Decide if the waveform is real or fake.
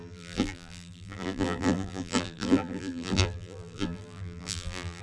fake